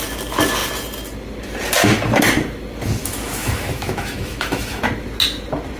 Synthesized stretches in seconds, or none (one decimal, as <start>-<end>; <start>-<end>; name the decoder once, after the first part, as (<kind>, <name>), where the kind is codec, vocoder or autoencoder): 3.0-4.8 (autoencoder, DAC-VAE)